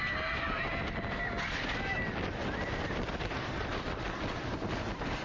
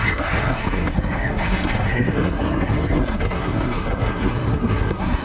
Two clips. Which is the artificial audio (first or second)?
second